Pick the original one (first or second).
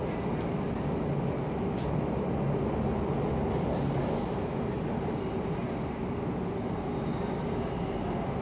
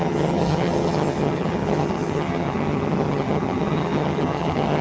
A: first